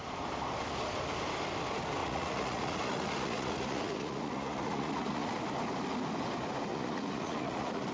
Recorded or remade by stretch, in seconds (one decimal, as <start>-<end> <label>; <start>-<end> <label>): 0.0-2.0 recorded; 2.0-5.4 remade; 5.4-6.7 recorded; 6.7-7.9 remade